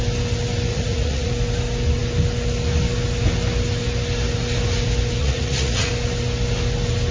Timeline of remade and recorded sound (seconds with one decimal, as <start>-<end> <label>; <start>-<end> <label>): 0.0-0.7 recorded; 0.7-1.3 remade; 1.3-5.2 recorded; 5.2-5.9 remade; 5.9-7.1 recorded